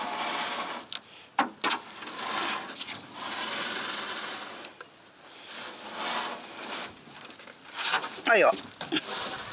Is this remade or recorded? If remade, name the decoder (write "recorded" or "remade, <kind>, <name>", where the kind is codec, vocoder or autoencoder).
recorded